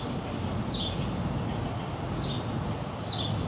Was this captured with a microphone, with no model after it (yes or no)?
yes